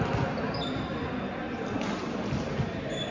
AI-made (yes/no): no